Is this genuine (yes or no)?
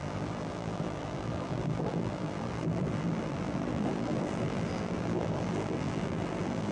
no